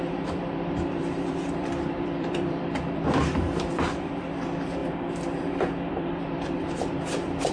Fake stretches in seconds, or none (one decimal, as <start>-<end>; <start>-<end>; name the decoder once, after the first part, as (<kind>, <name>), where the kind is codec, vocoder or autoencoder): 0.0-4.8 (vocoder, BigVGAN v2); 5.4-7.5